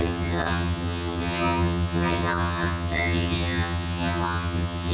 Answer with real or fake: fake